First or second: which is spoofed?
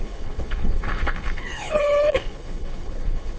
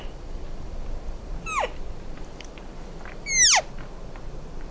first